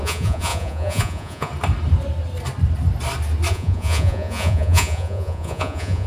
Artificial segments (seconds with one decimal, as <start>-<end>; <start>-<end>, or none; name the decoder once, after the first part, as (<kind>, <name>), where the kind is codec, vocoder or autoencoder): 0.0-1.5 (vocoder, Vocos); 3.5-6.1